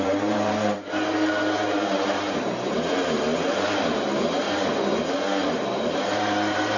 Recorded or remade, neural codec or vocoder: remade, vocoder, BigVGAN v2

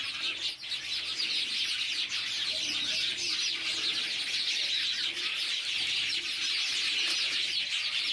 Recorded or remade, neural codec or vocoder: recorded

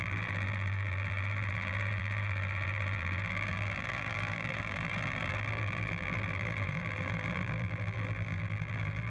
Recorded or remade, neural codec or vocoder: remade, vocoder, BigVGAN v2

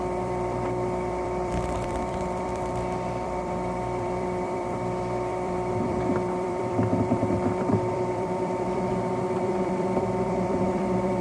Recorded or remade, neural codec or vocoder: remade, vocoder, BigVGAN v2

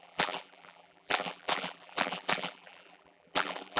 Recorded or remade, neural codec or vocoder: remade, vocoder, BigVGAN v2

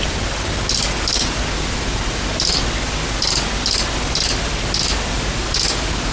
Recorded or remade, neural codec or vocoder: recorded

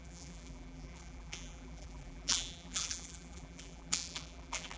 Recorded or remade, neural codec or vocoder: remade, vocoder, BigVGAN v2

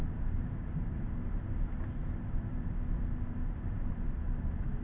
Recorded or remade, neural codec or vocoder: recorded